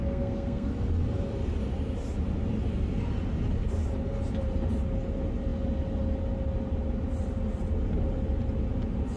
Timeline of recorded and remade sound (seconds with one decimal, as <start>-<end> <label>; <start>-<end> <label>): 0.0-0.7 remade; 0.7-9.2 recorded